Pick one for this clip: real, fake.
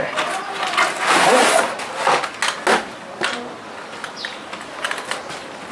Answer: real